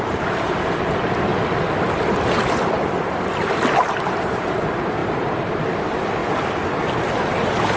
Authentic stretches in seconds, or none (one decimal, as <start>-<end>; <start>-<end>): 1.3-4.1; 6.2-6.8